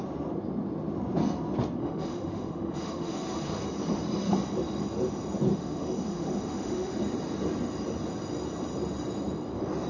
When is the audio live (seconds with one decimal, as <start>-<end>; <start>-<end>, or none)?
0.0-1.8; 3.6-5.5; 7.0-9.9